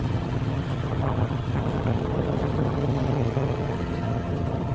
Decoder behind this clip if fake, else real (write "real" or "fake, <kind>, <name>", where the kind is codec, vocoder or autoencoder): fake, vocoder, HiFi-GAN